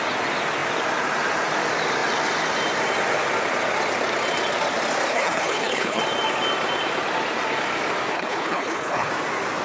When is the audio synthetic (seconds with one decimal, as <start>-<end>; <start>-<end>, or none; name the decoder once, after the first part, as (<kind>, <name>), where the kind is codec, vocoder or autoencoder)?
5.1-6.0 (codec, HILCodec); 8.1-9.1